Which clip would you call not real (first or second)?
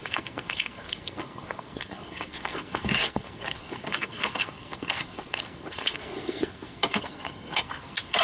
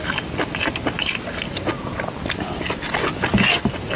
first